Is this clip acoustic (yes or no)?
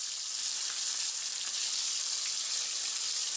yes